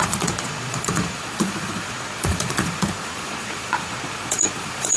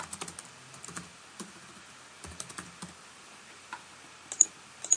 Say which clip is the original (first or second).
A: second